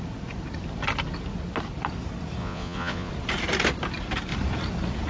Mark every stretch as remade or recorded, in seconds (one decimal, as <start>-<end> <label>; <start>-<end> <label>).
0.0-2.4 recorded; 2.4-3.1 remade; 3.1-5.1 recorded